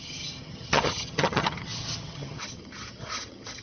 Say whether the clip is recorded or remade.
remade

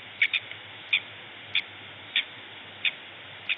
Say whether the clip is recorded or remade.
recorded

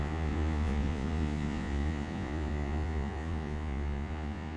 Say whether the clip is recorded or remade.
remade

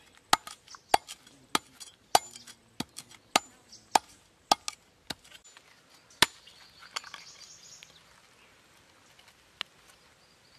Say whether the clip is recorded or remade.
recorded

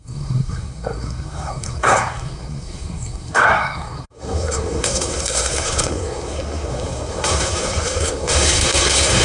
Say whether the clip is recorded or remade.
remade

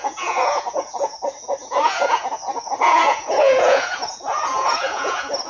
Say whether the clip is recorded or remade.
remade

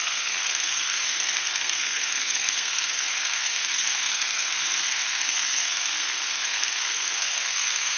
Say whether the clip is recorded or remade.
remade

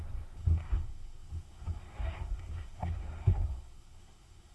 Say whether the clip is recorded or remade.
remade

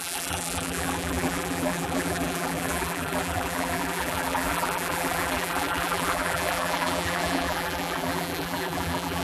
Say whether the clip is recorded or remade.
remade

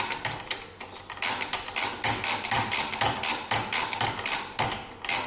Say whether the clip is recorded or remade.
recorded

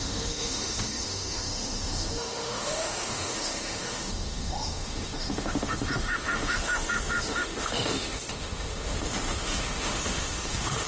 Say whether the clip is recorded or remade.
remade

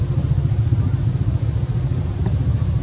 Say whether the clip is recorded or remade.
recorded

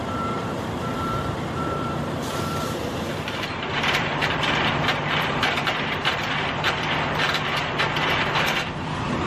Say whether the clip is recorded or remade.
remade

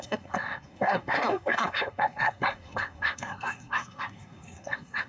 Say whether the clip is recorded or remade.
remade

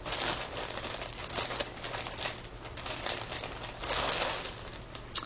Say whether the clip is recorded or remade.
recorded